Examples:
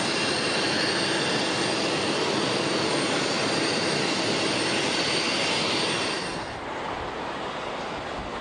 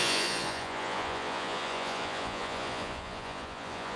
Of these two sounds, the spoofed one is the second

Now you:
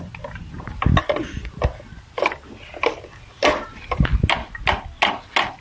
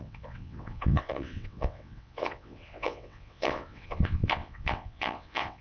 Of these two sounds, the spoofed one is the second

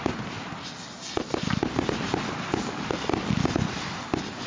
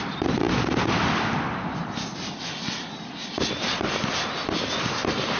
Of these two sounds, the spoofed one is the second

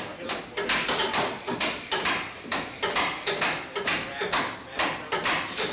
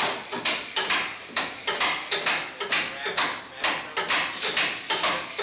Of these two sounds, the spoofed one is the first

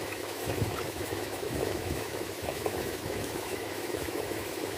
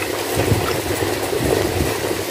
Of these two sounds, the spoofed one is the first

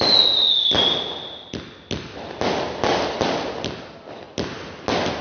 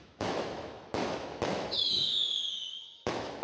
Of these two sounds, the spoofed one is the second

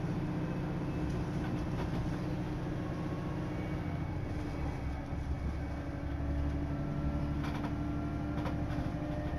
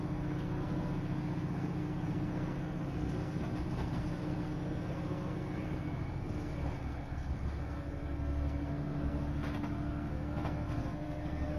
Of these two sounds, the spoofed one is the second